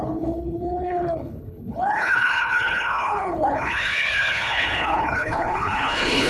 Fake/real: fake